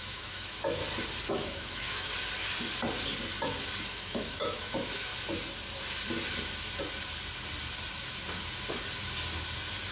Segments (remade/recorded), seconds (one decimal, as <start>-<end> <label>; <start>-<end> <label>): 0.0-0.8 remade; 0.8-1.3 recorded; 1.3-2.1 remade; 2.1-3.9 recorded; 3.9-5.1 remade; 5.1-9.9 recorded